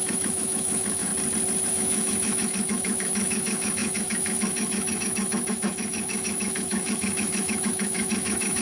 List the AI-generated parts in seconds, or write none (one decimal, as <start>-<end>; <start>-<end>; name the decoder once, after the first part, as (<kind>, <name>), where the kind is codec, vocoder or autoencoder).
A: 0.0-1.1 (autoencoder, DAC-VAE); 1.7-8.6